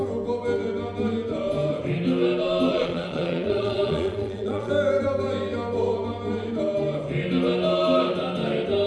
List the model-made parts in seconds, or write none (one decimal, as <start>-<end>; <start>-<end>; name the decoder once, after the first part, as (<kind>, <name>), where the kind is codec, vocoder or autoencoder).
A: 2.7-4.7 (vocoder, Vocos)